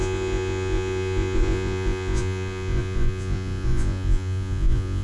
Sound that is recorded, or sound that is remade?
remade